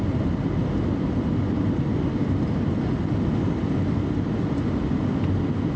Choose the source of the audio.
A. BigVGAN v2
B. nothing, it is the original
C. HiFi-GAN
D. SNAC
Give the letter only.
B